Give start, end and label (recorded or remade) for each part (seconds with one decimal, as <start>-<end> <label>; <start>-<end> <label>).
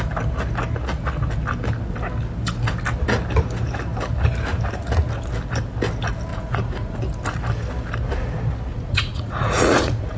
0.0-6.3 recorded; 6.3-7.0 remade; 7.0-8.7 recorded; 8.7-10.2 remade